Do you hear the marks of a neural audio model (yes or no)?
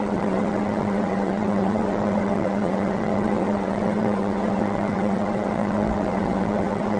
yes